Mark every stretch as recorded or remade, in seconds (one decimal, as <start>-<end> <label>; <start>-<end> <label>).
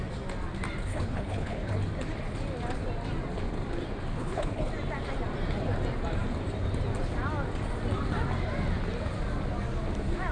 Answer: 0.0-0.8 recorded; 0.8-1.7 remade; 1.7-4.1 recorded; 4.1-4.7 remade; 4.7-10.3 recorded